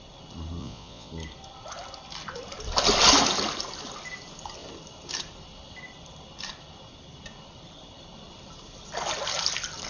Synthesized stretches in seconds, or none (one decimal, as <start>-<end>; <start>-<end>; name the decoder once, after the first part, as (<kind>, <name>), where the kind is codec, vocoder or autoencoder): 0.6-1.1 (vocoder, Vocos)